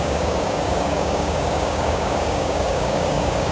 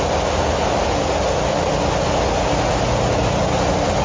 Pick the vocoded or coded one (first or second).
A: first